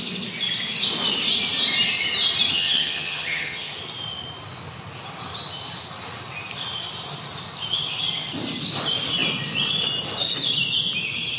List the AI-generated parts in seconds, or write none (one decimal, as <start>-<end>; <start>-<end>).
2.5-3.7